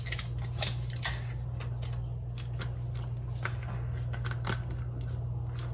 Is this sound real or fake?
real